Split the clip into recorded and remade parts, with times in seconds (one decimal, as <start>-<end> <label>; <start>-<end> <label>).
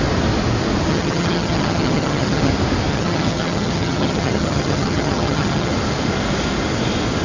0.0-0.9 recorded; 0.9-2.5 remade; 2.5-2.9 recorded; 2.9-5.7 remade; 5.7-7.2 recorded